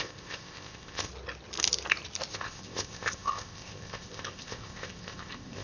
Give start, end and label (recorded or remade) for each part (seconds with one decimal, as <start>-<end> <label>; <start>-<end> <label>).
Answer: 0.0-1.1 remade; 1.1-2.3 recorded; 2.3-5.6 remade